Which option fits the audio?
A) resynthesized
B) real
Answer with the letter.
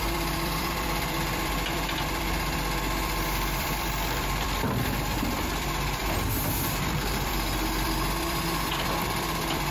A